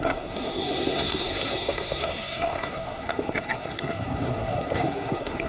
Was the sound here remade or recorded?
remade